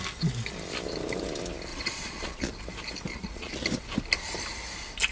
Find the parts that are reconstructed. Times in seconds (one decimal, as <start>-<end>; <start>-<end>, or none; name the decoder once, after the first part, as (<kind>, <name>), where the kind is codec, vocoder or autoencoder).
1.7-2.5 (vocoder, Vocos); 3.1-3.6